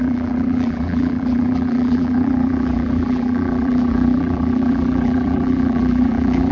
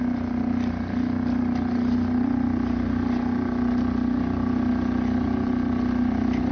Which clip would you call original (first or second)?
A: second